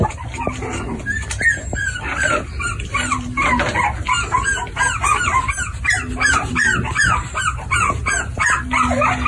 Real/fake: real